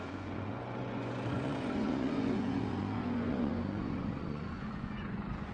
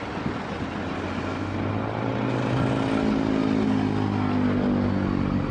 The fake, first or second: first